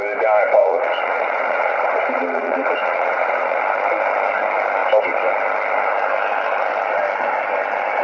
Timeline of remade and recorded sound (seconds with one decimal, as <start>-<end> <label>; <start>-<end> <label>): 0.0-0.6 recorded; 0.6-3.6 remade; 3.6-8.0 recorded